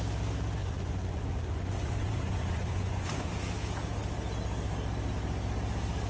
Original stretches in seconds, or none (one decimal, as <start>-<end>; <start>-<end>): 0.0-0.6; 3.3-6.1